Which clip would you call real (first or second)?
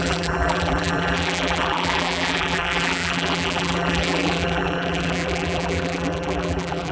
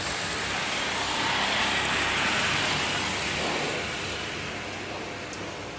second